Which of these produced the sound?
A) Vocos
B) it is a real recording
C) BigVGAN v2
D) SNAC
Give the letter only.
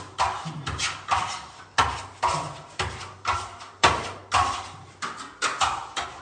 B